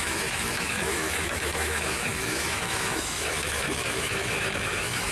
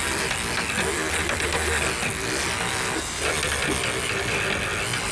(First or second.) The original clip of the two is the second